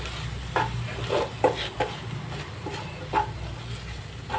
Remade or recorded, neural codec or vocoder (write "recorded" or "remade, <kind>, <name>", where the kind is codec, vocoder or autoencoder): recorded